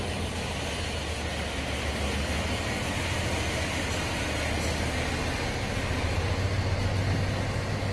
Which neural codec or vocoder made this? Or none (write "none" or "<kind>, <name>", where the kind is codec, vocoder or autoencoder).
none